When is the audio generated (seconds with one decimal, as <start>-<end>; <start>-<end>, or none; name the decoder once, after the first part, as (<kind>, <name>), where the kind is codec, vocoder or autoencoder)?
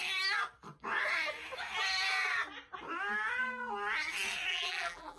4.5-5.2 (vocoder, BigVGAN v2)